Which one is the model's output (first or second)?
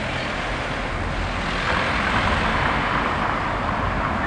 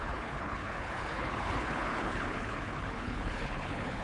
second